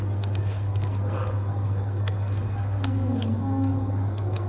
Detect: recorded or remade remade